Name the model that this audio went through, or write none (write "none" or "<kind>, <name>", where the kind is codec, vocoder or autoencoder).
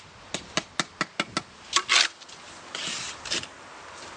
none